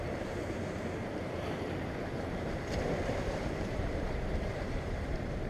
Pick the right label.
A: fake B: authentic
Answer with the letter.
A